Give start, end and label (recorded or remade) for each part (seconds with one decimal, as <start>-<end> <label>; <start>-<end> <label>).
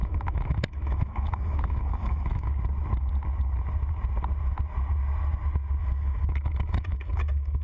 0.0-2.5 remade; 2.5-5.8 recorded; 5.8-7.6 remade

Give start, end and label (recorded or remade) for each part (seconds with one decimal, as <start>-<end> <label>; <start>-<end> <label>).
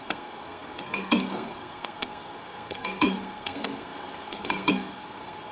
0.0-5.5 remade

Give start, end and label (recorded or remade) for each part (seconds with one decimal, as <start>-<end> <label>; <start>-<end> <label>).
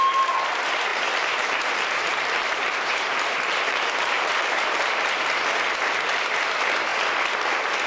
0.0-0.9 recorded; 0.9-5.1 remade; 5.1-7.9 recorded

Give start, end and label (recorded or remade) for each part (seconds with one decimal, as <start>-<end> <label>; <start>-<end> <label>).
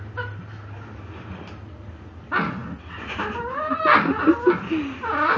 0.0-5.4 recorded